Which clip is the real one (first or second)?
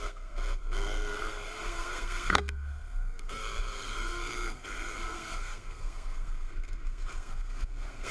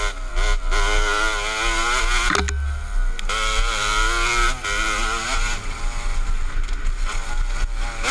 second